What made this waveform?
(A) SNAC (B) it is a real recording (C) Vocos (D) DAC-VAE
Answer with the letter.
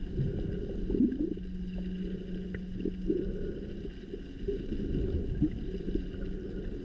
B